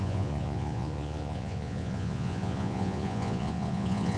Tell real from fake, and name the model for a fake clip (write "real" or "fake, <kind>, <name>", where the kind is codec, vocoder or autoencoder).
fake, vocoder, Vocos